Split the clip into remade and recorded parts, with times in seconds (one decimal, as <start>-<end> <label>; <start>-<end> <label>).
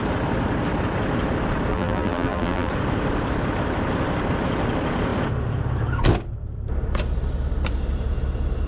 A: 0.0-1.7 recorded; 1.7-2.7 remade; 2.7-8.7 recorded